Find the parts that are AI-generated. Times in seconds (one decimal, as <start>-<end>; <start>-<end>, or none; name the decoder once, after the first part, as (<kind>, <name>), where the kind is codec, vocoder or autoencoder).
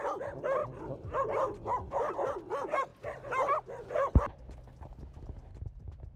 0.6-2.0 (vocoder, BigVGAN v2); 5.5-6.2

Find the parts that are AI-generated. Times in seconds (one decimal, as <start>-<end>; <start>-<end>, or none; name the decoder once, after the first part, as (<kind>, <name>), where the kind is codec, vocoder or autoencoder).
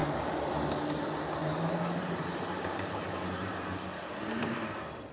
0.0-0.7 (vocoder, BigVGAN v2); 1.4-4.5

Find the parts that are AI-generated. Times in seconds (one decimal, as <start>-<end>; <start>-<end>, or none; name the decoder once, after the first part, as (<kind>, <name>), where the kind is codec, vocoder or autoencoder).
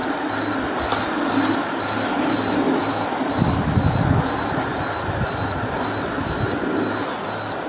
0.0-3.6 (vocoder, BigVGAN v2)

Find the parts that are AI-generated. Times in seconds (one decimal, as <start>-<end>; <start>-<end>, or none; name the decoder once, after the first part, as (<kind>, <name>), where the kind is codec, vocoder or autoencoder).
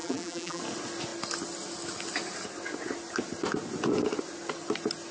0.0-0.6 (vocoder, BigVGAN v2)